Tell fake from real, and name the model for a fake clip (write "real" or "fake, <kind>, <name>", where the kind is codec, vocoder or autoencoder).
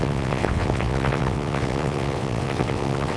fake, vocoder, WaveNeXt